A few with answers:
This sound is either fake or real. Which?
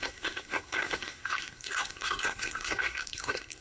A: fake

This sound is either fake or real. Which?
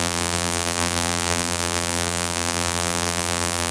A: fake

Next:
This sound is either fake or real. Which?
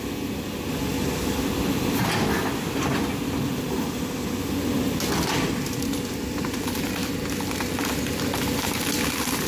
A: real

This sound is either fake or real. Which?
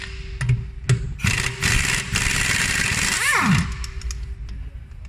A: real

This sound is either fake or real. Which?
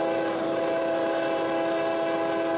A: real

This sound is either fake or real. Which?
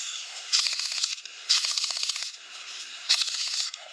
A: fake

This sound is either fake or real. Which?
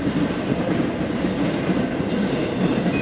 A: real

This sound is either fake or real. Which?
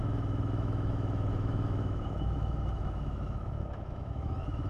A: fake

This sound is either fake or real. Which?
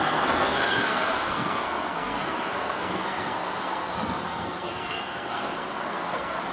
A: fake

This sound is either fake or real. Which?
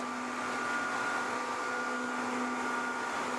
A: real